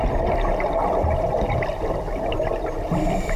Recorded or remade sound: recorded